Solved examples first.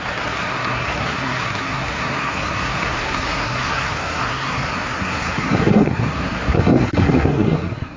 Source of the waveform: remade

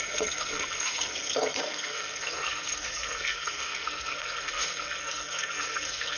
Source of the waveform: remade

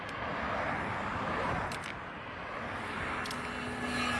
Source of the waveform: recorded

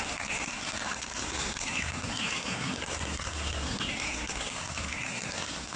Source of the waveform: remade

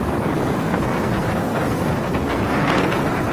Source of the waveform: remade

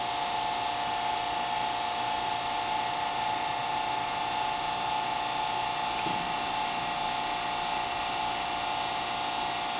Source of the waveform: recorded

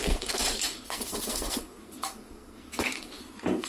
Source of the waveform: remade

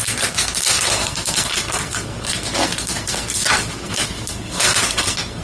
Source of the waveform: remade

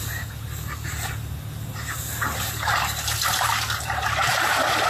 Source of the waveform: recorded